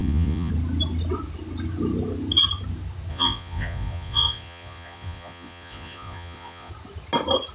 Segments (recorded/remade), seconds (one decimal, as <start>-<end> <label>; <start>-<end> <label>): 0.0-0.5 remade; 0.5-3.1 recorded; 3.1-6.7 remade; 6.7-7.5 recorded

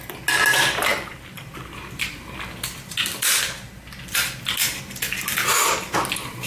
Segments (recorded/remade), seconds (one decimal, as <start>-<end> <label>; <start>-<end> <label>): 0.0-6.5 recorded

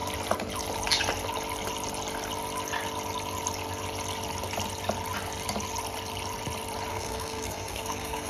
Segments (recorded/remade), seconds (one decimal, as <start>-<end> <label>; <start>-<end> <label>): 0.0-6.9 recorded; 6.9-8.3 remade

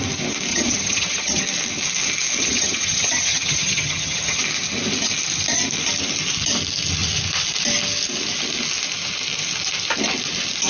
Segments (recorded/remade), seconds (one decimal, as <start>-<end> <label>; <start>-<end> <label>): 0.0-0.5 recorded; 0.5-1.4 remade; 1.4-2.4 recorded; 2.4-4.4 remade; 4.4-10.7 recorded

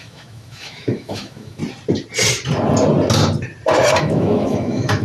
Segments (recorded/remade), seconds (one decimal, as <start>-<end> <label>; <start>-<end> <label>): 0.0-1.6 remade; 1.6-4.0 recorded; 4.0-5.0 remade

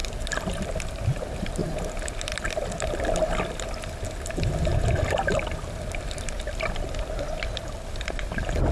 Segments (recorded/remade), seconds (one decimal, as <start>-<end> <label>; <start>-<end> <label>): 0.0-0.5 recorded; 0.5-1.6 remade; 1.6-5.8 recorded; 5.8-8.7 remade